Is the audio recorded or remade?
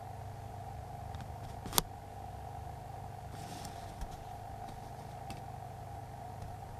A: recorded